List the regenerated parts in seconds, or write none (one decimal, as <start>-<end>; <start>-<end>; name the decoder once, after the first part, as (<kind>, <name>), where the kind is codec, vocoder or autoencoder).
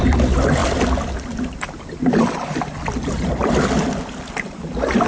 none